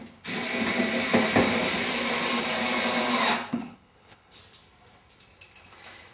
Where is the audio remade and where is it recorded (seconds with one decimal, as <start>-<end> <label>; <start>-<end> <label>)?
0.0-3.5 recorded; 3.5-4.4 remade; 4.4-6.1 recorded